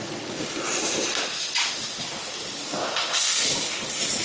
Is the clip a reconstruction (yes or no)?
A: no